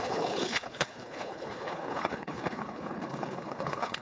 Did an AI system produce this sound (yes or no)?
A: yes